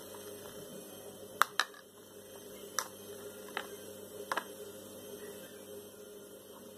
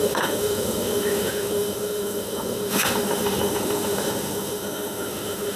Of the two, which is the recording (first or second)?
first